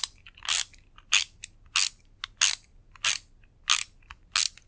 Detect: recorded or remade recorded